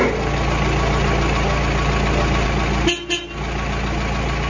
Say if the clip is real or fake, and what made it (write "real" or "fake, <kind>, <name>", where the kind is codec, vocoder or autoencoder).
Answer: real